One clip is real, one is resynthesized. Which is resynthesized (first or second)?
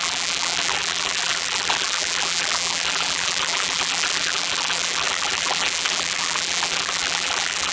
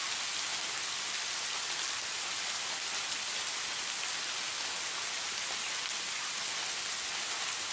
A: first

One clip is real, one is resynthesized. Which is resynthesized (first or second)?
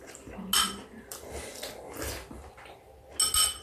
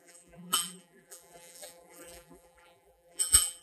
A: second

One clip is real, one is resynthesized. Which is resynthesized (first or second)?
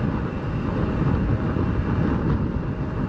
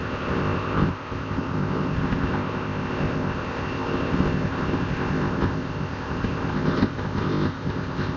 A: second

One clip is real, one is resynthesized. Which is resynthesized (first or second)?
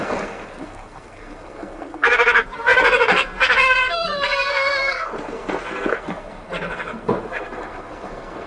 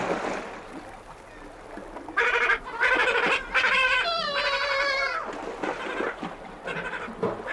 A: first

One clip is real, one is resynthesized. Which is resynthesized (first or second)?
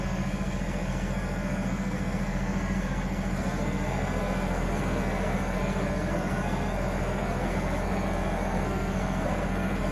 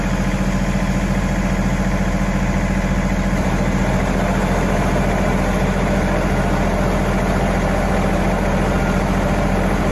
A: first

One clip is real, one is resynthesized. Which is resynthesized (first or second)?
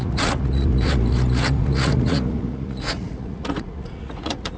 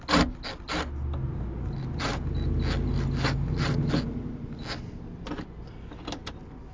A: first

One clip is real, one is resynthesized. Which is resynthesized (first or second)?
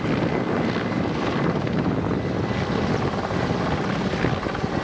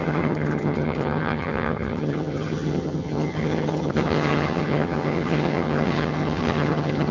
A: second